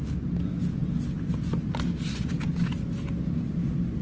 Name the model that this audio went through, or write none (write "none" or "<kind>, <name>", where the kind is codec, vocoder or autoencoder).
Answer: none